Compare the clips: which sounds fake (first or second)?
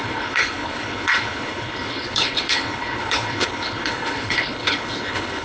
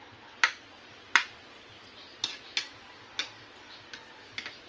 first